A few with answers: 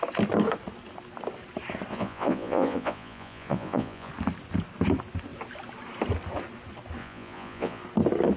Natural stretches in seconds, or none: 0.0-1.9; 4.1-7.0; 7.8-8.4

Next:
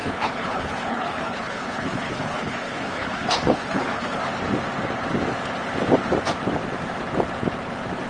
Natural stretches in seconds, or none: 4.2-8.1

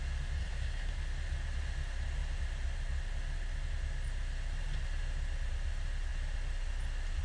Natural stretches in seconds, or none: 0.0-0.4; 0.9-7.2

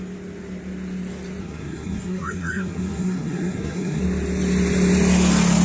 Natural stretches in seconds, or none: 0.0-1.4; 4.0-5.6

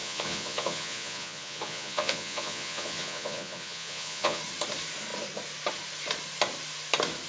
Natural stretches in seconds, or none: 4.4-7.3

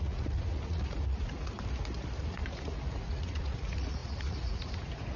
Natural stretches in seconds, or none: 1.5-2.2